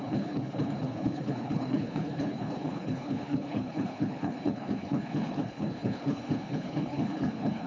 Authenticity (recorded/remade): remade